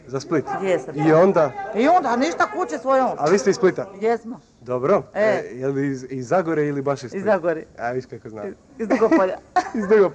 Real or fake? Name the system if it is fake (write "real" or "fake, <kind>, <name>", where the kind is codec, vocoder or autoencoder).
real